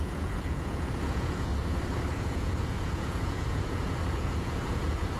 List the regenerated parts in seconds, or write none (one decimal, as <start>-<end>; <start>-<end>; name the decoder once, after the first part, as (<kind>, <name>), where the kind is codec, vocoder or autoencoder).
0.0-1.5 (vocoder, Vocos); 2.2-5.2